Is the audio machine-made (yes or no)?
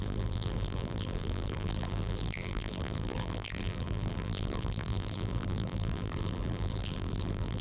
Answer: yes